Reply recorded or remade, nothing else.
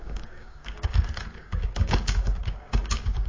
remade